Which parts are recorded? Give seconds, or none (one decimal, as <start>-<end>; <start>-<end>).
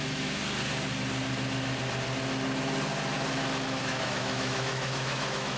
0.4-3.8